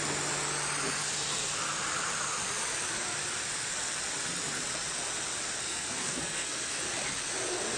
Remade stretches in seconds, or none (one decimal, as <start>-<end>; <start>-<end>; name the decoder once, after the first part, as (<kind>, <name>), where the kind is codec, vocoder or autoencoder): 5.6-6.8 (codec, SNAC)